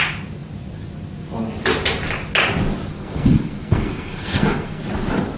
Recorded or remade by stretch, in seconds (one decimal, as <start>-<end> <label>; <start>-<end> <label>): 0.0-2.9 recorded; 2.9-4.8 remade; 4.8-5.4 recorded